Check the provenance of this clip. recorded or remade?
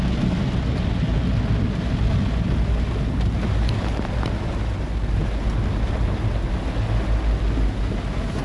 recorded